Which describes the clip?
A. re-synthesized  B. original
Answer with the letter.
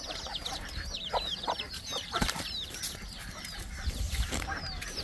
A